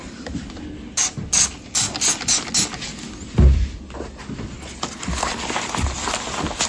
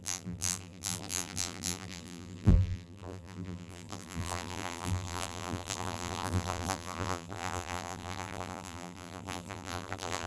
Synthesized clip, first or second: second